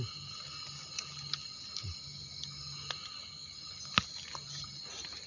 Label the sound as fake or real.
real